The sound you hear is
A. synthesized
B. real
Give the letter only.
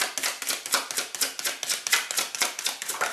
B